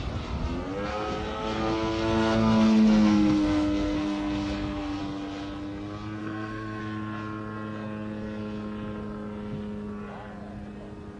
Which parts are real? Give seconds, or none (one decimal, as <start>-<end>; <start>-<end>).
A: 0.0-0.9; 5.0-6.2; 6.8-11.2